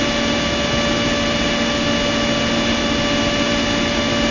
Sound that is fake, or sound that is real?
real